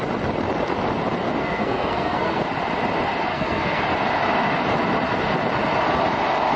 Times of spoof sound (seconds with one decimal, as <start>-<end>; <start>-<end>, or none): 1.4-2.4; 3.3-3.8